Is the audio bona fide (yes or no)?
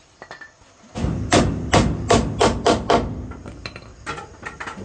yes